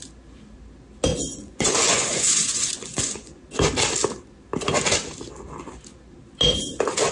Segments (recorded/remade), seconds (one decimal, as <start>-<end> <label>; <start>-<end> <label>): 0.0-1.1 recorded; 1.1-3.4 remade; 3.4-7.1 recorded